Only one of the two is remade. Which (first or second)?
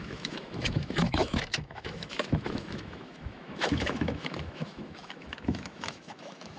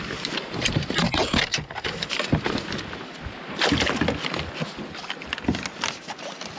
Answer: first